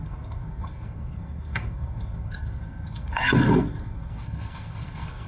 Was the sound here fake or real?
fake